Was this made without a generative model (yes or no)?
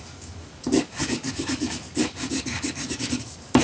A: no